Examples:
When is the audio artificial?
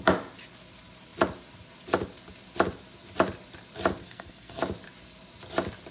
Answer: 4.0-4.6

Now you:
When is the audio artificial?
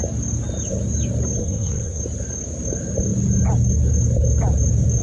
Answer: 1.4-2.0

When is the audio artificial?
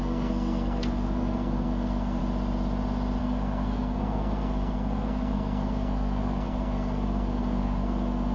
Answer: 0.0-2.2; 3.2-8.3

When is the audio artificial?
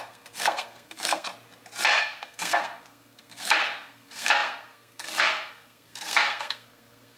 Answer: 0.0-1.3; 2.0-7.2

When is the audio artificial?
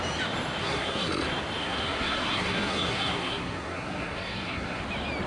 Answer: 0.6-1.1; 1.6-4.8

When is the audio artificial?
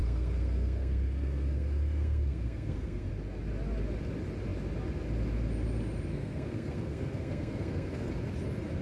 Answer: 0.0-3.1; 6.1-8.1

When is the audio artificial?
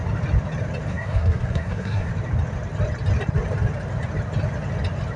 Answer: 0.9-2.1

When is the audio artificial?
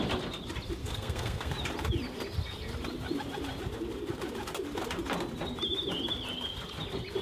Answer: 0.8-1.5